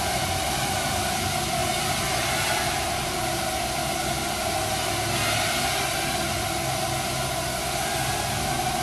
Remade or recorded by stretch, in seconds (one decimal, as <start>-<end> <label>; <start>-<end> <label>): 0.0-8.8 recorded